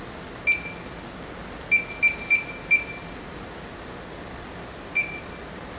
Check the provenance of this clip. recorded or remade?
recorded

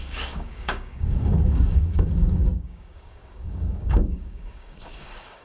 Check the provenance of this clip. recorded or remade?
remade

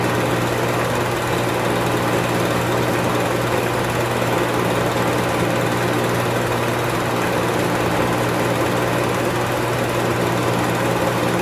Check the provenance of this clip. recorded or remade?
recorded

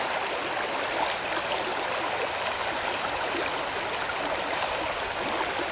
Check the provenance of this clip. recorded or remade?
recorded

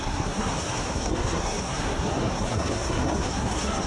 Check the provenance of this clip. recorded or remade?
remade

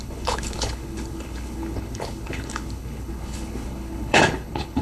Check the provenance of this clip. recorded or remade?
remade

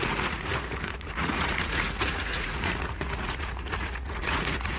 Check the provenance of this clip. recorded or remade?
remade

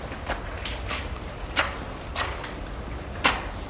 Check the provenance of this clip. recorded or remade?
recorded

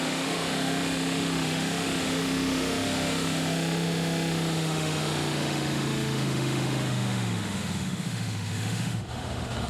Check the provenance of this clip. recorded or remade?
remade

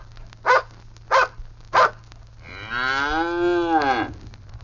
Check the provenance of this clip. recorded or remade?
recorded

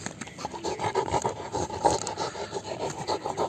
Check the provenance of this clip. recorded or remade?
recorded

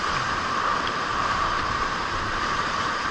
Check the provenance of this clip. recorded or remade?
remade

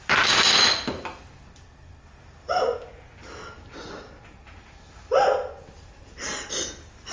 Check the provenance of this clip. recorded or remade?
recorded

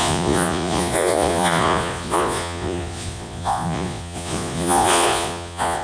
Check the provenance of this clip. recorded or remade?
remade